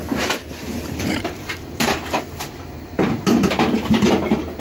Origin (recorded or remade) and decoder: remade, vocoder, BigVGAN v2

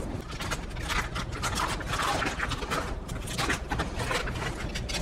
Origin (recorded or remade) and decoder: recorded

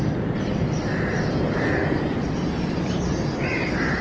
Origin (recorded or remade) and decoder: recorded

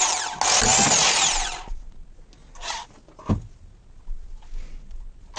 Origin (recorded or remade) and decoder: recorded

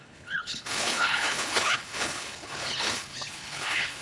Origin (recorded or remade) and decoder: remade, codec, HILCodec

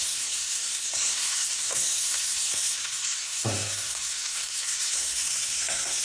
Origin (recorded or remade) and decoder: remade, codec, SNAC